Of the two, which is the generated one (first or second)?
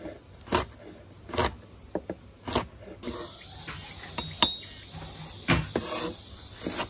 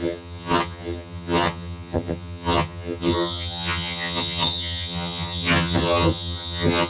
second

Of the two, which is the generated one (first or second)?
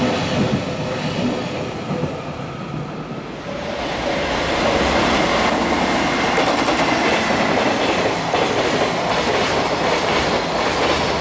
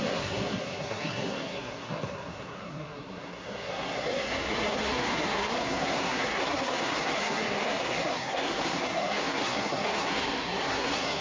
second